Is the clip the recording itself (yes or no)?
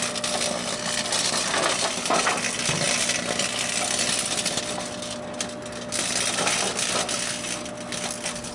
yes